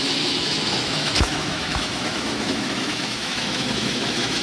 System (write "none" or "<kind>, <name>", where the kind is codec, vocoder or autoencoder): autoencoder, DAC-VAE